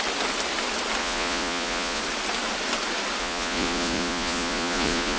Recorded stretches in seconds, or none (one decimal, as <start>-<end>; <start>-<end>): 0.0-1.0; 2.0-3.2